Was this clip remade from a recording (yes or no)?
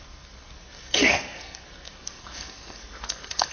yes